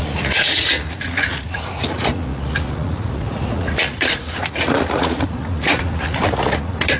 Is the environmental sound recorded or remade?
remade